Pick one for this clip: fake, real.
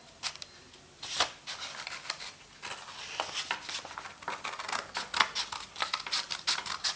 real